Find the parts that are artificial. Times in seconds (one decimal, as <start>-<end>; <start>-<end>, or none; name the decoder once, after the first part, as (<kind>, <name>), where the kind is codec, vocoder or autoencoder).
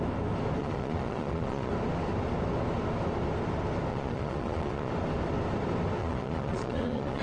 0.6-1.7 (vocoder, Vocos); 3.9-4.9; 6.0-7.2